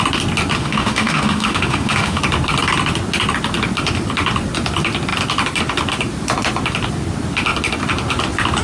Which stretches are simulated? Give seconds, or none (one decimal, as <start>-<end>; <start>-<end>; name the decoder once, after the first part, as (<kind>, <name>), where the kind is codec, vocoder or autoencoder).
0.6-2.2 (autoencoder, DAC-VAE)